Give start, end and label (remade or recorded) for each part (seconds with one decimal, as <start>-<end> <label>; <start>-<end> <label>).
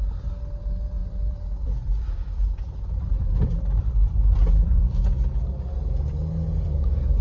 0.0-1.0 recorded; 1.0-5.0 remade; 5.0-7.2 recorded